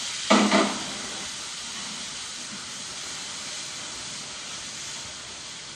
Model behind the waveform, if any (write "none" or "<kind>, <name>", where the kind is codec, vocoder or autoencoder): none